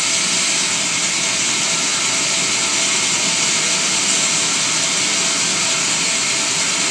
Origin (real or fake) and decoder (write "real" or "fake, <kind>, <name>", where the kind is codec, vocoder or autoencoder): real